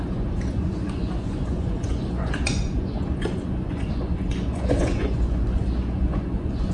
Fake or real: fake